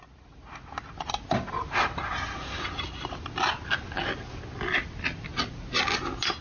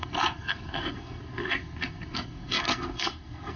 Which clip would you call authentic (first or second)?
first